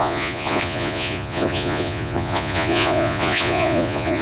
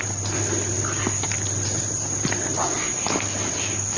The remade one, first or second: first